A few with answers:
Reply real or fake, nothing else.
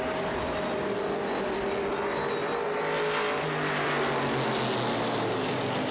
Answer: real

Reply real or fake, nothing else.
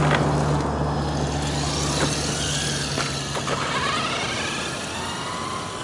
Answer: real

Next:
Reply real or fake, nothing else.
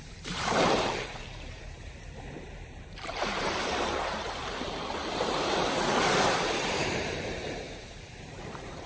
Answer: fake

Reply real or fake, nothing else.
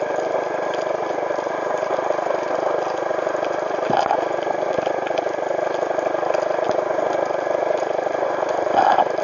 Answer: real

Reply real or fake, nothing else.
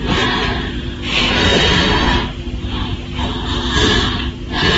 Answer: real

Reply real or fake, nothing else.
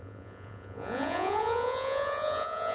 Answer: fake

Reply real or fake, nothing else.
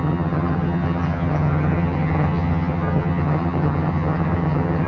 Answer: fake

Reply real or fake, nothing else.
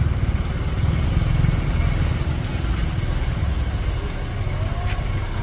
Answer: real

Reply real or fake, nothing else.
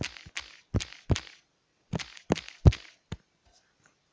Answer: real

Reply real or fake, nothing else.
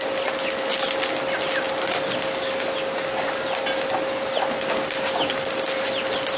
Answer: real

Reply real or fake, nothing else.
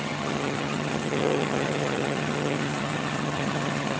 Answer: fake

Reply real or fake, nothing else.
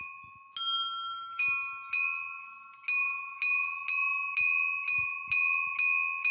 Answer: real